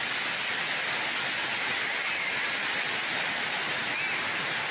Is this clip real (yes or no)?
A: yes